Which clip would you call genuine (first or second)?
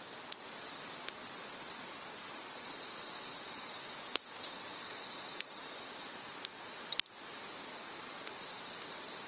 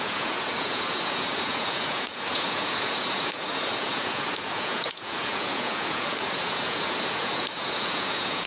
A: first